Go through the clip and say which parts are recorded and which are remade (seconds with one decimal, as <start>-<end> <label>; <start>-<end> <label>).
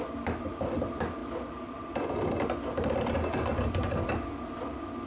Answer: 0.0-5.1 recorded